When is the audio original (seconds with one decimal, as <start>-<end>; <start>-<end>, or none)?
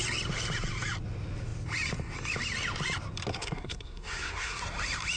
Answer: 0.0-3.3; 4.6-5.2